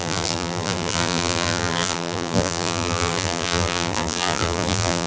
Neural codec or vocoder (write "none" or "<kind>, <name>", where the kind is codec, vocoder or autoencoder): vocoder, BigVGAN v2